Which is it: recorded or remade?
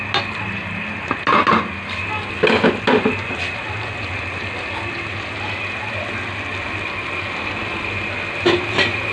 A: recorded